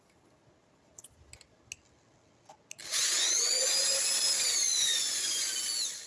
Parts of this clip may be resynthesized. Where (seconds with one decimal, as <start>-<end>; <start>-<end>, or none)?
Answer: 2.9-3.7; 4.6-5.5